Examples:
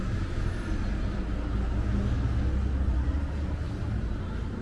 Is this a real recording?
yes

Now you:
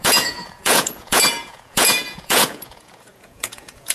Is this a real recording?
no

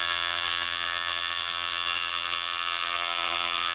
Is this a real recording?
no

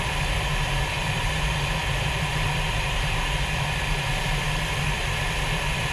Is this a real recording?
no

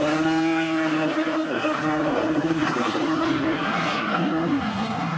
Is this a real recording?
no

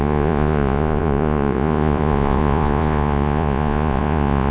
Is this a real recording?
no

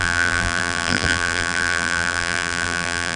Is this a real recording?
no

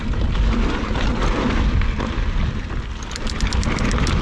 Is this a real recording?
yes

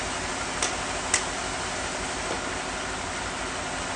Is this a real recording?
yes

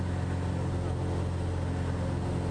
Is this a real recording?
yes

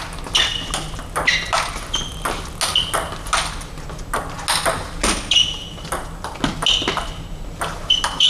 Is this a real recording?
yes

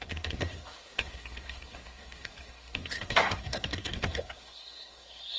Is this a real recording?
no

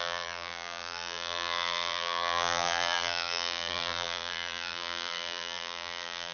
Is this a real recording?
no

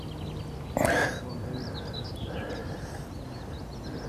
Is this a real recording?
yes